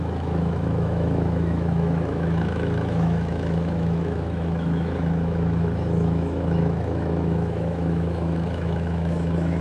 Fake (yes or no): yes